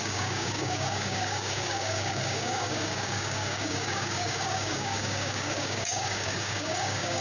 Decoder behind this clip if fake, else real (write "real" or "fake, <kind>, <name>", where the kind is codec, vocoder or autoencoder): fake, codec, DAC